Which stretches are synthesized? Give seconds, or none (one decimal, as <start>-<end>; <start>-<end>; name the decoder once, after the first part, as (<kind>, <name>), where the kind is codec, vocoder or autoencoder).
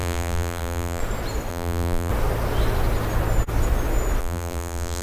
0.0-1.0 (vocoder, BigVGAN v2); 1.5-2.1; 4.2-5.0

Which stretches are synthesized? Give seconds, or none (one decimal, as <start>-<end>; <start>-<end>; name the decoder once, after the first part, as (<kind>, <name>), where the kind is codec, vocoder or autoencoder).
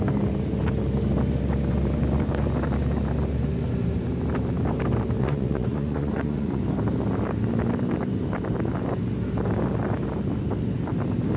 5.2-6.6 (vocoder, Vocos)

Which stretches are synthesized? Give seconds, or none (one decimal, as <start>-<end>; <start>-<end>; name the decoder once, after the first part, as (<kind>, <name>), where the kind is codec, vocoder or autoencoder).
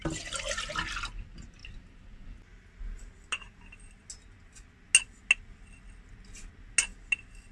none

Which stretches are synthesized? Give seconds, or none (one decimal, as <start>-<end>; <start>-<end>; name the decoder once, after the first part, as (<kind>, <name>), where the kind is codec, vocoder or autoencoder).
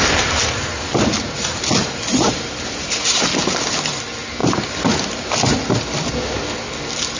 none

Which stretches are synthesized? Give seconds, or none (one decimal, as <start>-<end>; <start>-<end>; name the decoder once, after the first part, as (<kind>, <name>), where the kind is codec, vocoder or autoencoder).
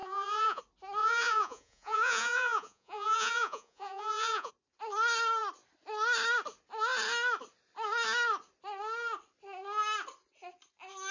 0.0-0.6 (vocoder, Vocos); 1.0-4.5